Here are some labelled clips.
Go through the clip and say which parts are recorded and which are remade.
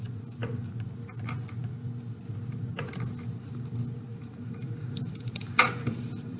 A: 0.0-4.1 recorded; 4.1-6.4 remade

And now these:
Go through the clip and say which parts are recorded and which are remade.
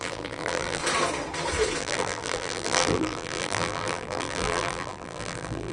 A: 0.0-0.8 remade; 0.8-1.8 recorded; 1.8-5.7 remade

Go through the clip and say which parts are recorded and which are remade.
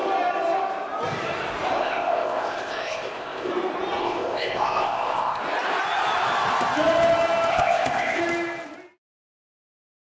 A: 0.0-1.8 recorded; 1.8-3.5 remade; 3.5-4.0 recorded; 4.0-5.4 remade; 5.4-7.5 recorded; 7.5-8.2 remade; 8.2-10.1 recorded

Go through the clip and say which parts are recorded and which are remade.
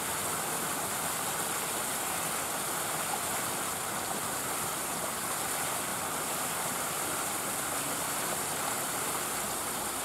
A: 0.0-5.9 recorded; 5.9-8.7 remade; 8.7-10.0 recorded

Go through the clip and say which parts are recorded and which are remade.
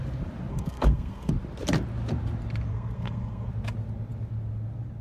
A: 0.0-0.5 recorded; 0.5-1.3 remade; 1.3-2.7 recorded; 2.7-3.5 remade; 3.5-5.0 recorded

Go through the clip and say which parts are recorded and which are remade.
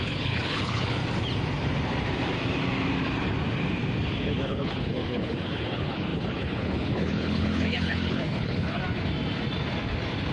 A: 0.0-1.0 remade; 1.0-4.2 recorded; 4.2-8.8 remade; 8.8-10.3 recorded